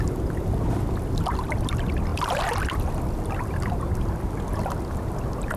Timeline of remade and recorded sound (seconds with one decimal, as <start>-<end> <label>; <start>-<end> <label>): 0.0-5.6 recorded